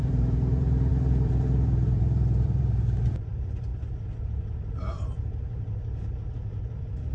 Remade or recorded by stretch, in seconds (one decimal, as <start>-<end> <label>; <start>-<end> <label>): 0.0-3.7 remade; 3.7-4.2 recorded; 4.2-7.1 remade